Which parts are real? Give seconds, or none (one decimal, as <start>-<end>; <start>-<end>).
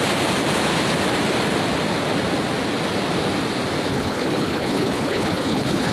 0.0-3.9